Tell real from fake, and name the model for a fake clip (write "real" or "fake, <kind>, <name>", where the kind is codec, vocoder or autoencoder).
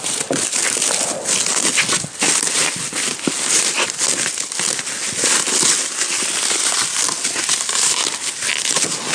real